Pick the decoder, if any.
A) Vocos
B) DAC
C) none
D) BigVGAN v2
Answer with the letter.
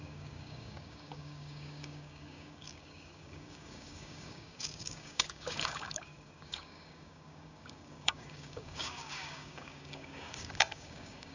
B